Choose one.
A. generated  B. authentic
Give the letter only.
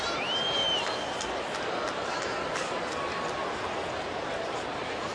B